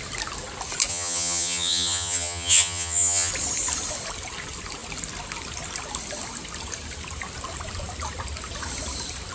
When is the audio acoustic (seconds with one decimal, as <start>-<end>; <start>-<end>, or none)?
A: 0.0-0.9; 3.3-9.3